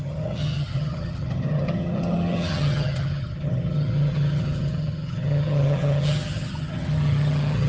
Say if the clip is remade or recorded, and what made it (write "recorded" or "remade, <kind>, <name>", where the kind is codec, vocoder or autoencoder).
remade, vocoder, HiFi-GAN